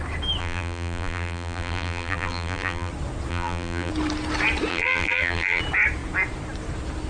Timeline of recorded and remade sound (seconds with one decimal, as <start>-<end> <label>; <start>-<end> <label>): 0.0-0.4 recorded; 0.4-2.9 remade; 2.9-3.3 recorded; 3.3-3.9 remade; 3.9-4.7 recorded; 4.7-5.6 remade; 5.6-7.1 recorded